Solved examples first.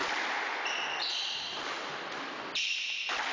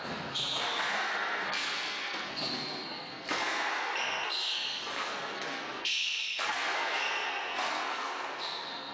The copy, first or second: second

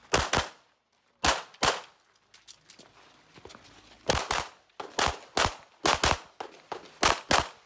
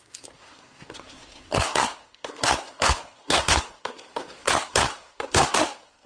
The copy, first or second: second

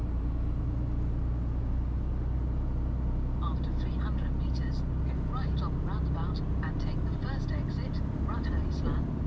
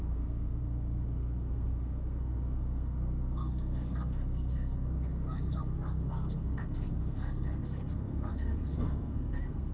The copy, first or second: second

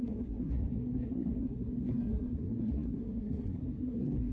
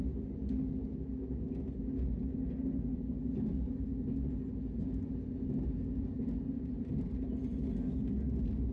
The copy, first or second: first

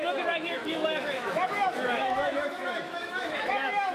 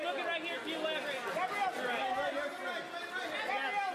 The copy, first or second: first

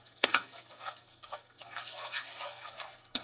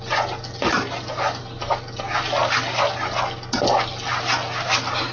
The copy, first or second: first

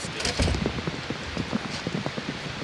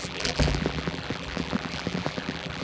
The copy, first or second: second